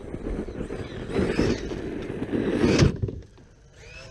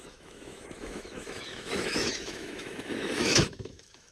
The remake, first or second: second